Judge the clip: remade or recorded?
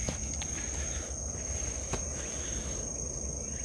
recorded